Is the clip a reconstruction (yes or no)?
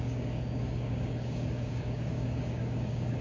yes